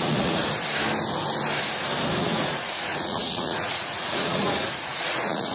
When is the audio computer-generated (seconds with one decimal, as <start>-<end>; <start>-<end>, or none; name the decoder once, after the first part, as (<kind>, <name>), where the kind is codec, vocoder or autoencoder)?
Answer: 0.0-0.4 (vocoder, Vocos); 2.2-5.5